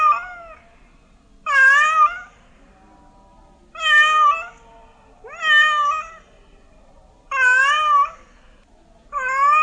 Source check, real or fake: real